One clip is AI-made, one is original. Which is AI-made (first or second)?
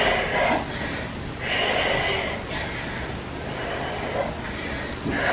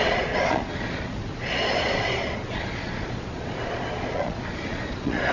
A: second